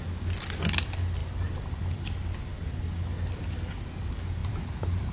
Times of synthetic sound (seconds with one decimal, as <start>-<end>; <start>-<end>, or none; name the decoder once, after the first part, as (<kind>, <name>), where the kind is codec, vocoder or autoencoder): 4.4-5.1 (vocoder, BigVGAN v2)